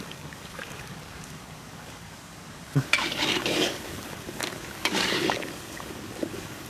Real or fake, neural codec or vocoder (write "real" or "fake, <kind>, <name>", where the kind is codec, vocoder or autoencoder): fake, codec, DAC